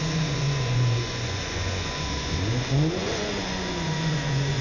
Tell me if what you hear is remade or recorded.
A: remade